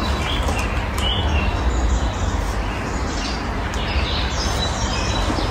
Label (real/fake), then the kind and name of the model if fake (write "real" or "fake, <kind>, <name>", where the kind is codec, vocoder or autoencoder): real